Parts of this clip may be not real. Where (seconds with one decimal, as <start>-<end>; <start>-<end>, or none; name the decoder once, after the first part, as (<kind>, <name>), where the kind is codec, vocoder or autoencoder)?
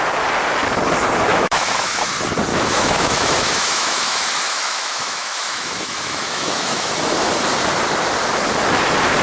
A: 1.3-2.1 (autoencoder, DAC-VAE); 2.5-6.9